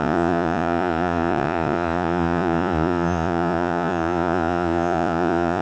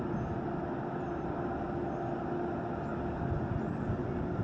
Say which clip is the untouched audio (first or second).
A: second